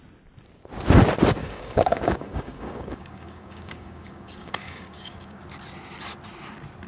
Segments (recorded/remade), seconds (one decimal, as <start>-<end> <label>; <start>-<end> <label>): 0.0-1.4 recorded; 1.4-5.4 remade; 5.4-6.9 recorded